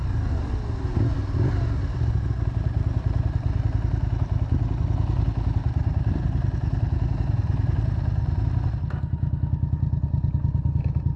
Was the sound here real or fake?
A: real